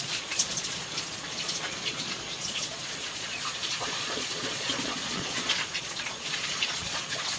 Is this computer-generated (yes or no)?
yes